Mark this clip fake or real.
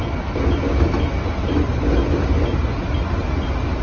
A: real